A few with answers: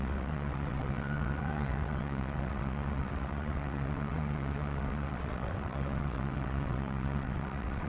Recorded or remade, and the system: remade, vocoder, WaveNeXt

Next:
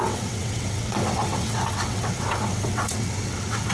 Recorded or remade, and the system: remade, vocoder, WaveNeXt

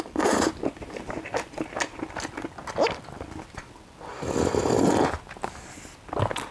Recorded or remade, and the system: recorded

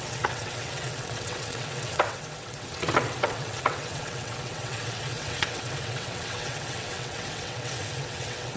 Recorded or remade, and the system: remade, vocoder, WaveNeXt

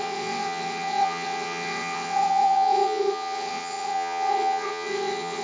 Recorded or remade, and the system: remade, vocoder, WaveNeXt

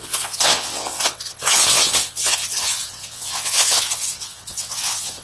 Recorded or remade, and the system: remade, vocoder, WaveNeXt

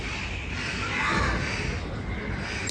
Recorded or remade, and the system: recorded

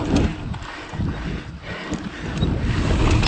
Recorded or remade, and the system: recorded